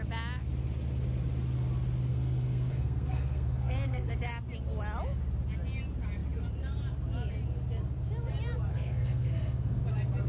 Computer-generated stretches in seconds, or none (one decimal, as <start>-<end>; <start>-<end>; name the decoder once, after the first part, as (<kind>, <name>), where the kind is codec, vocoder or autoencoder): 2.1-4.1 (codec, SNAC); 8.7-9.8